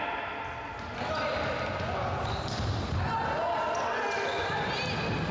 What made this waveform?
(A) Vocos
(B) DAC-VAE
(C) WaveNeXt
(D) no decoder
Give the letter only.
D